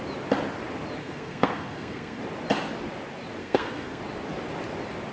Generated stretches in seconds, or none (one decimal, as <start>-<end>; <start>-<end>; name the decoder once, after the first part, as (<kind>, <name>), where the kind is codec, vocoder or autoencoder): 1.0-2.2 (codec, SNAC); 3.4-4.0